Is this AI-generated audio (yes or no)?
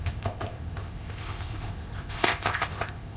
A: yes